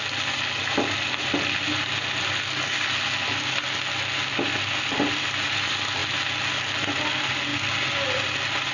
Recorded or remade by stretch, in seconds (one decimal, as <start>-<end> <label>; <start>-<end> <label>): 0.0-8.7 recorded